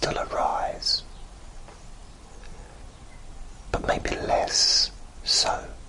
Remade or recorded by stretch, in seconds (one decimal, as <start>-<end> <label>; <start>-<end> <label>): 0.0-5.9 recorded